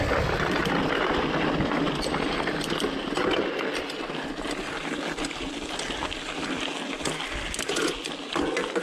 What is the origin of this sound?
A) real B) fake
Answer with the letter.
A